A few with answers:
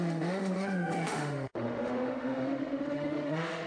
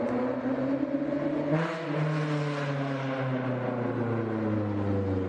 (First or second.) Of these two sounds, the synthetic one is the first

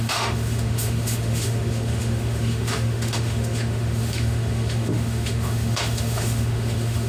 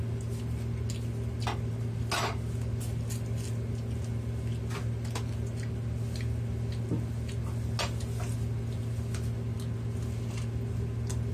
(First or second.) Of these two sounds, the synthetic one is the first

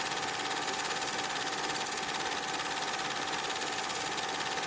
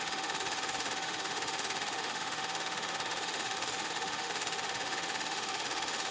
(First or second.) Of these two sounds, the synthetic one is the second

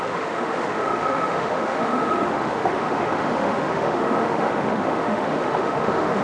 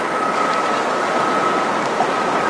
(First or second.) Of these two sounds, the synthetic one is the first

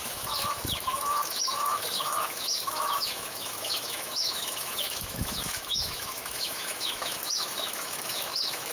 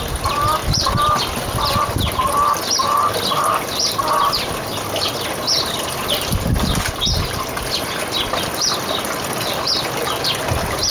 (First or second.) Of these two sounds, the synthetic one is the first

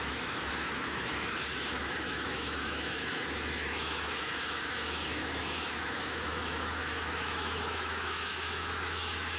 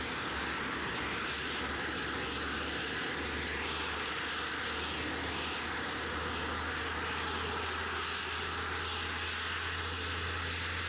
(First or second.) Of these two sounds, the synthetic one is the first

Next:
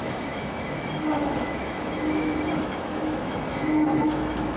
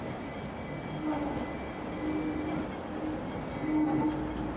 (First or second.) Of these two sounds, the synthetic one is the first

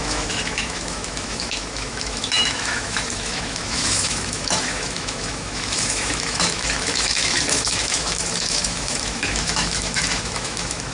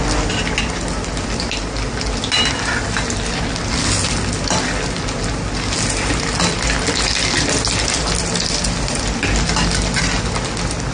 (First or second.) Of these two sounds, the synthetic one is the first